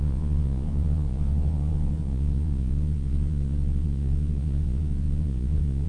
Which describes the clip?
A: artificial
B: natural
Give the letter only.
A